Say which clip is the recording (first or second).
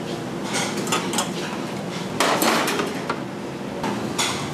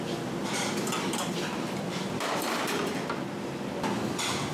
first